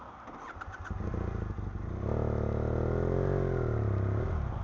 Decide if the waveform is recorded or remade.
recorded